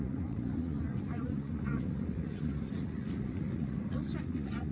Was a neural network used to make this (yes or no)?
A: yes